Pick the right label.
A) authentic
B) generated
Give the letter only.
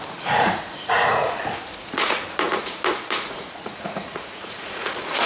B